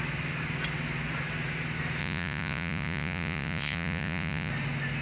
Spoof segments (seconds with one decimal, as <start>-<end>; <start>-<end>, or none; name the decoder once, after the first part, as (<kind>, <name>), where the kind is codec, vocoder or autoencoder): 2.0-4.5 (vocoder, Vocos)